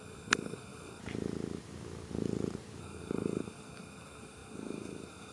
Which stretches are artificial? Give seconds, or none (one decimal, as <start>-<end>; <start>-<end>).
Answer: 0.0-1.0; 2.8-5.3